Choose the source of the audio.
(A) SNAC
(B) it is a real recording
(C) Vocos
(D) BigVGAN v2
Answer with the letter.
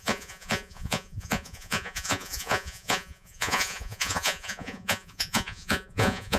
C